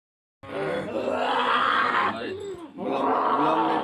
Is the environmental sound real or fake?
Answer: real